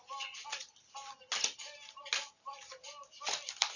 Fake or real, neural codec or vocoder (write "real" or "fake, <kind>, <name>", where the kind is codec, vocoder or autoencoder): real